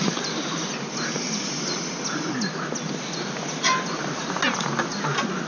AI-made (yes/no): no